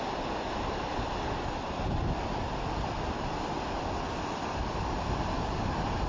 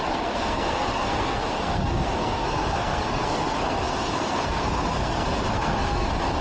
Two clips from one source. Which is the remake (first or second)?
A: second